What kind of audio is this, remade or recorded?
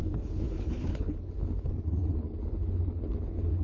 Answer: remade